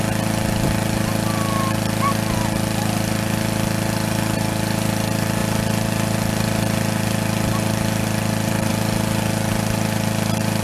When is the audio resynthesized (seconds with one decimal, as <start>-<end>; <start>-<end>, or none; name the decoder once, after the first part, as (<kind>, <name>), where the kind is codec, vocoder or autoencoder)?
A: none